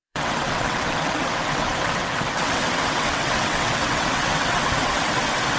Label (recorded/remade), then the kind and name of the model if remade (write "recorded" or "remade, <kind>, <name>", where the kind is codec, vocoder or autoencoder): remade, vocoder, WaveNeXt